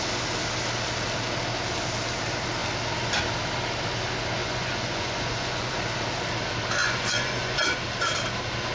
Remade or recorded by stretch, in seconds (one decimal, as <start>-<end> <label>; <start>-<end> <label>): 0.0-4.4 recorded; 4.4-5.7 remade; 5.7-6.8 recorded; 6.8-7.6 remade; 7.6-8.7 recorded